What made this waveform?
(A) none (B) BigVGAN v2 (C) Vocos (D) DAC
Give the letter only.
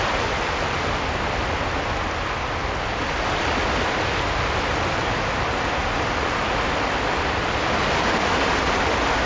A